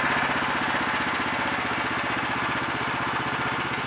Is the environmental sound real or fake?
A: real